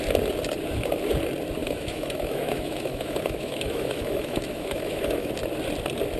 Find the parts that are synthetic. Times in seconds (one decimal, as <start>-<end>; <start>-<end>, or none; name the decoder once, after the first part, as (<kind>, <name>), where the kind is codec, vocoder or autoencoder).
1.6-5.3 (autoencoder, DAC-VAE)